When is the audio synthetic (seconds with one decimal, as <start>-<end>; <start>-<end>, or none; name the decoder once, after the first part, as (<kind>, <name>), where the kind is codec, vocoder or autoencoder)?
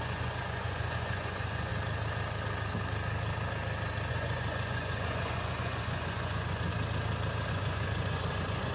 0.0-1.7 (vocoder, Vocos); 4.1-6.7; 7.5-8.7